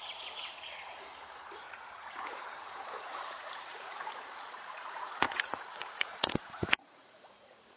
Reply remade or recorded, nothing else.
remade